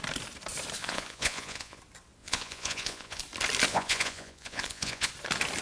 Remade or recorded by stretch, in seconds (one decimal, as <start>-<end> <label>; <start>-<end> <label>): 0.0-0.8 recorded; 0.8-1.8 remade; 1.8-2.2 recorded; 2.2-3.2 remade; 3.2-3.7 recorded; 3.7-5.1 remade; 5.1-5.6 recorded

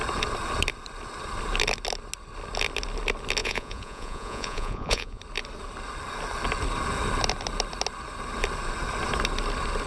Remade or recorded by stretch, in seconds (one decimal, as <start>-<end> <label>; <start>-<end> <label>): 0.0-3.4 recorded; 3.4-5.2 remade; 5.2-9.9 recorded

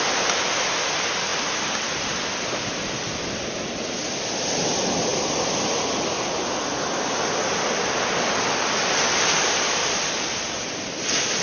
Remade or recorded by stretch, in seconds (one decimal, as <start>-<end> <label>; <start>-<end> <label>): 0.0-11.4 recorded

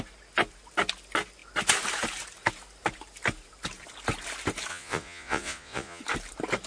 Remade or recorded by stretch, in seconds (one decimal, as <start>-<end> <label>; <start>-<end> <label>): 0.0-4.7 recorded; 4.7-6.0 remade; 6.0-6.7 recorded

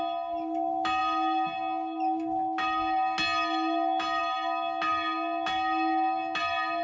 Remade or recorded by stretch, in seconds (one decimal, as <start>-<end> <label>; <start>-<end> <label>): 0.0-6.8 recorded

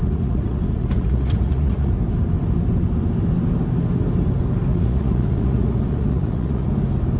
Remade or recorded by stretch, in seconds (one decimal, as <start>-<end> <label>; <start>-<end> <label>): 0.0-1.9 remade; 1.9-4.7 recorded; 4.7-6.7 remade; 6.7-7.2 recorded

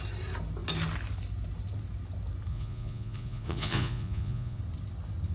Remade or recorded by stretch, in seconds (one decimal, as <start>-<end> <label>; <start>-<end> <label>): 0.0-2.5 recorded; 2.5-4.6 remade; 4.6-5.3 recorded

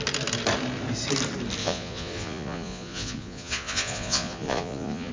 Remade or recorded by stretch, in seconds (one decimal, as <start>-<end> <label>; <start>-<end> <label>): 0.0-1.6 recorded; 1.6-5.1 remade